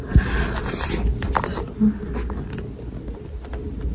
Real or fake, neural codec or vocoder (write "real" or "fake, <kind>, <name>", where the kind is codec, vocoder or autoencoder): real